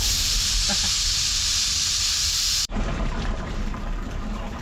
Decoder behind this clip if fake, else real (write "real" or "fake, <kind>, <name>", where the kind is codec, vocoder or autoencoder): fake, vocoder, BigVGAN v2